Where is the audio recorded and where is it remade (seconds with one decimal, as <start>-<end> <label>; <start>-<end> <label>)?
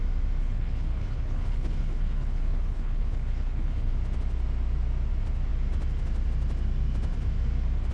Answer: 0.0-0.4 recorded; 0.4-3.9 remade; 3.9-7.9 recorded